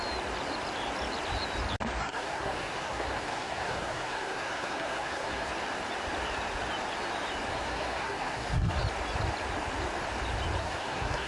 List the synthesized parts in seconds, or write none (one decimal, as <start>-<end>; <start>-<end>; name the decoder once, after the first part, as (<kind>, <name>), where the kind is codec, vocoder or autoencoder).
2.0-5.5 (codec, SNAC); 7.5-8.8; 10.6-11.3